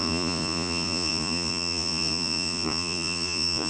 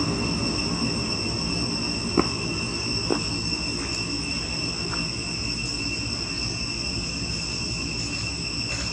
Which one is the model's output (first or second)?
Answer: first